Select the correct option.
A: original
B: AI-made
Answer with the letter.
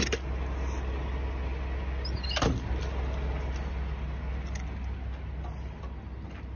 A